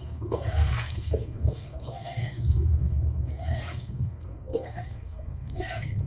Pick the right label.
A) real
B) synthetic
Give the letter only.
B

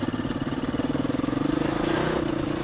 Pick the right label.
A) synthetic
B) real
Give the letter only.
B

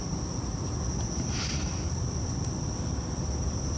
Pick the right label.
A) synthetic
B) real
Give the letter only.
B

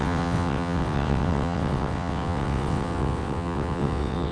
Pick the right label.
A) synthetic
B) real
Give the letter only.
A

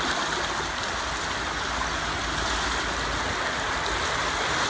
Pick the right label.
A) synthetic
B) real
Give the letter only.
B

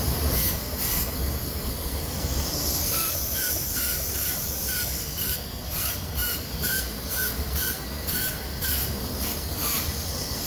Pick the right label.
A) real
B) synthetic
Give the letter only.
B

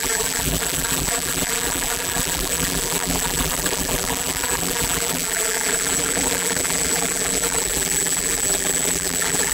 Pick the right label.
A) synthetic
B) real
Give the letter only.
A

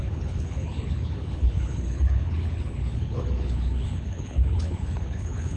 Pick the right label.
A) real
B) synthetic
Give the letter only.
B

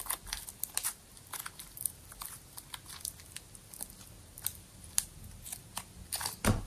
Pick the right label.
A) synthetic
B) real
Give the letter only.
B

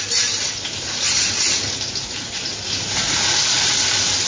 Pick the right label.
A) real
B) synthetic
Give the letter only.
A